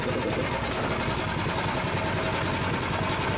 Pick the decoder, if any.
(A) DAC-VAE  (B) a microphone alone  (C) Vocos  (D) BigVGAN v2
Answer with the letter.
B